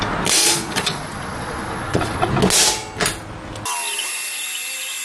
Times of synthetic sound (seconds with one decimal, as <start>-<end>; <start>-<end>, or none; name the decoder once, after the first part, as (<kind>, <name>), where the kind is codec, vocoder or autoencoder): 0.4-2.3 (vocoder, Vocos)